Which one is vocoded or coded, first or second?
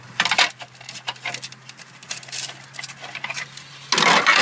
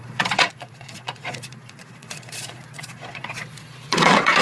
second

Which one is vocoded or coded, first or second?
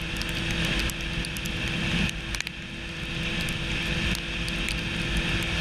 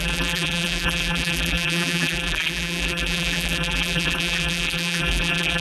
second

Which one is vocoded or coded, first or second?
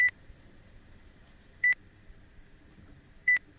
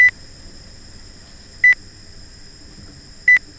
first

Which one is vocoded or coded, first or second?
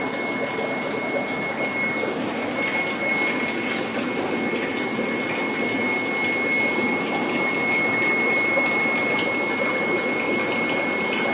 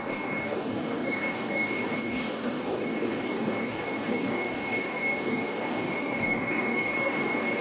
second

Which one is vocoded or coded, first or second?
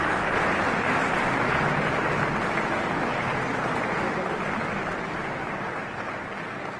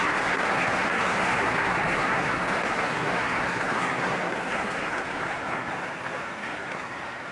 second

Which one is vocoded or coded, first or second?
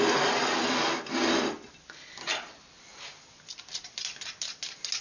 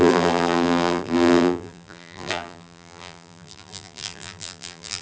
second